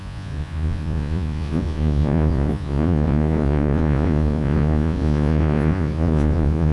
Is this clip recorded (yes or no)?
no